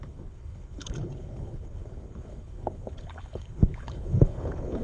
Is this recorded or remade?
remade